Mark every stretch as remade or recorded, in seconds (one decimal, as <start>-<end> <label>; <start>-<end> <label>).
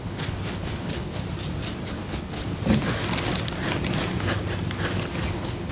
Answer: 0.0-1.2 remade; 1.2-1.9 recorded; 1.9-2.4 remade; 2.4-5.3 recorded; 5.3-5.7 remade